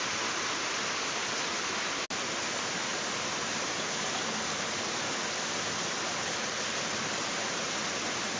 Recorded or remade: recorded